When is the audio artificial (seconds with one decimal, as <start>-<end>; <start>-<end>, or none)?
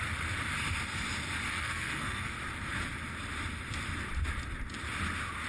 1.5-2.3